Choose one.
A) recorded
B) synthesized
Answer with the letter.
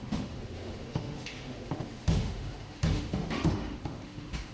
B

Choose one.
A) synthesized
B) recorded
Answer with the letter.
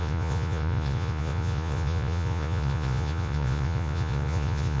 A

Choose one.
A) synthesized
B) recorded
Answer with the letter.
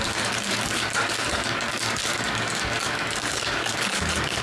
A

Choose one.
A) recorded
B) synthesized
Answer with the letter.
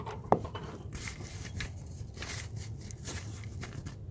A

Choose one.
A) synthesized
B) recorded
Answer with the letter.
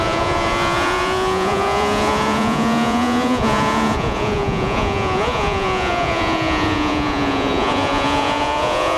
A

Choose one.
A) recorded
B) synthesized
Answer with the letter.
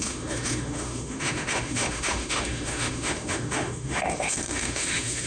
B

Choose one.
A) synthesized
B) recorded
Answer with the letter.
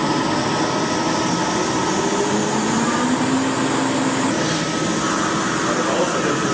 B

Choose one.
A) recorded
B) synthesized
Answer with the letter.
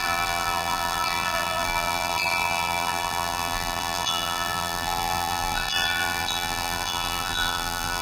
B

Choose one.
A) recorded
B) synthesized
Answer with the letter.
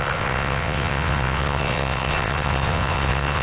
B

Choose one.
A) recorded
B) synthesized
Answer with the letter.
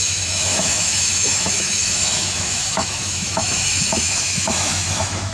B